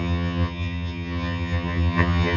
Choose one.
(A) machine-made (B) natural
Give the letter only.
A